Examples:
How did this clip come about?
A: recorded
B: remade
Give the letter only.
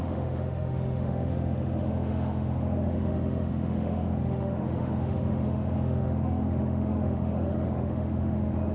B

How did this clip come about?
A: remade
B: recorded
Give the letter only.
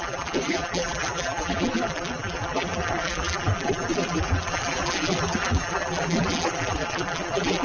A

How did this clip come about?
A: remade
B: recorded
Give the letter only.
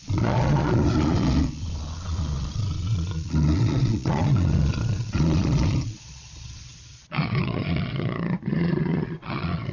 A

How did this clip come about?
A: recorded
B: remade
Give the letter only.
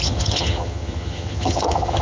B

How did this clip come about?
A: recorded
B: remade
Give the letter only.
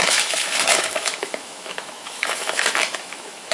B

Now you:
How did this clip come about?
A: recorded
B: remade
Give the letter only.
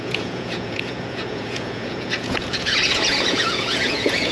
B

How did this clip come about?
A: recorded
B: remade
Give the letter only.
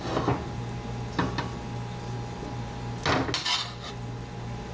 A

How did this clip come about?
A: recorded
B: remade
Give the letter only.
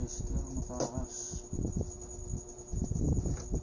A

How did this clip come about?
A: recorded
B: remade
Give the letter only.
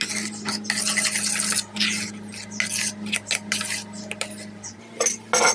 A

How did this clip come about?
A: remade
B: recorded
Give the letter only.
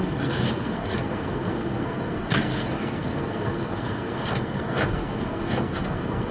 A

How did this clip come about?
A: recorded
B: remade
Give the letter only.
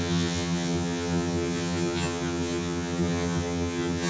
B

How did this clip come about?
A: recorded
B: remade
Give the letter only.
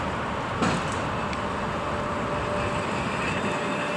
A